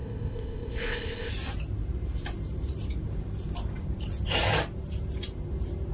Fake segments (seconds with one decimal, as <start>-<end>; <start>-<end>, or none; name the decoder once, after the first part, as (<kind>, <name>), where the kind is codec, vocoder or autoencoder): 0.0-1.3 (codec, ZipCodec)